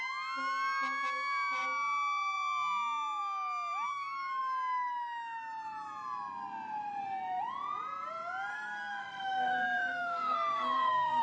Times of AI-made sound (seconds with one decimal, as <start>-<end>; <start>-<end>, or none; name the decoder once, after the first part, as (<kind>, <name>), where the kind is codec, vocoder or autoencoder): 8.5-11.2 (codec, SNAC)